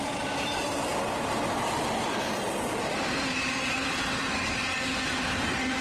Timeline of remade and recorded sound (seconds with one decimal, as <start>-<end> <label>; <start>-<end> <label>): 0.0-5.8 recorded